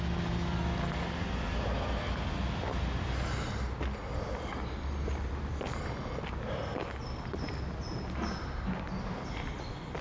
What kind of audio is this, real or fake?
real